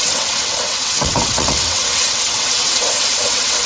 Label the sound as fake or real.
fake